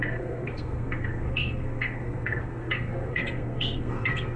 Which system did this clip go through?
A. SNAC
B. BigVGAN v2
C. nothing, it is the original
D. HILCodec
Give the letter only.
A